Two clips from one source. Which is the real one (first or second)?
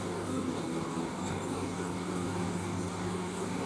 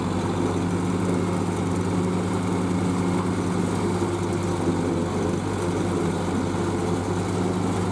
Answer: second